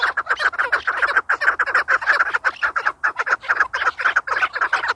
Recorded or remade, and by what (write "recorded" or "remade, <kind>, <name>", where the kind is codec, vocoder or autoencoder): recorded